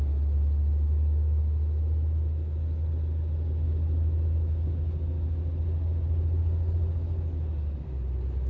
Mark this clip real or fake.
real